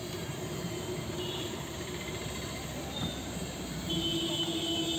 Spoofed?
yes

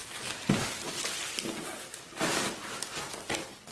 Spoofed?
no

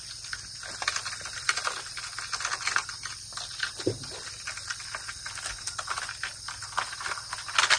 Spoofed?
no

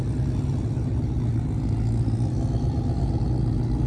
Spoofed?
no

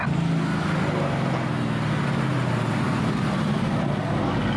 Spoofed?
no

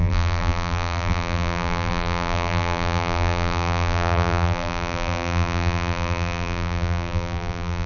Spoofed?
yes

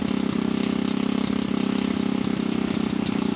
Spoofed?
no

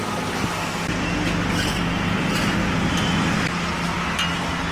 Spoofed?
no